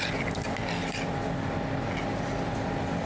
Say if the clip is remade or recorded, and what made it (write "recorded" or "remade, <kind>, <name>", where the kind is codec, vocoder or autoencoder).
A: recorded